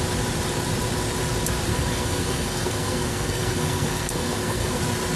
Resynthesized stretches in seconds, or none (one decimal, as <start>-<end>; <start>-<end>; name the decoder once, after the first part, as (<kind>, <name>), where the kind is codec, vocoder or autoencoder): 1.7-4.8 (codec, SNAC)